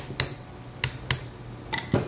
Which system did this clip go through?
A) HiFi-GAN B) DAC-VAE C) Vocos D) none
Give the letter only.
D